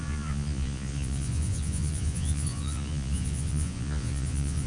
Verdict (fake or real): fake